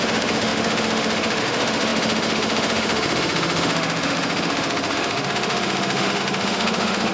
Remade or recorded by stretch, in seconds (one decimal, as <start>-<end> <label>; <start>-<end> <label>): 0.0-7.1 remade